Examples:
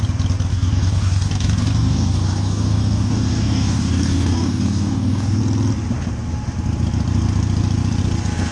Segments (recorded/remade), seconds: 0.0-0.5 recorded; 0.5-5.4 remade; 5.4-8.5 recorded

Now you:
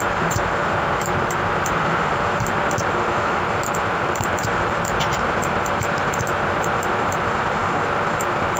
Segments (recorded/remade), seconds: 0.0-7.6 remade; 7.6-8.2 recorded; 8.2-8.6 remade

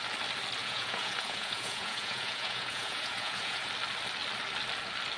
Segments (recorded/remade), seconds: 0.0-0.6 recorded; 0.6-3.7 remade; 3.7-5.2 recorded

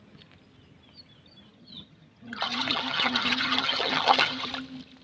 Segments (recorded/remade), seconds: 0.0-1.5 recorded; 1.5-4.5 remade; 4.5-5.0 recorded

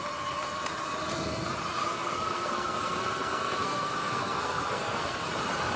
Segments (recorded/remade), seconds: 0.0-1.8 recorded; 1.8-5.3 remade; 5.3-5.8 recorded

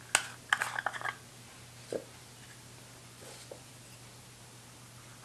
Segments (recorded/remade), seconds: 0.0-3.0 recorded; 3.0-3.7 remade; 3.7-5.2 recorded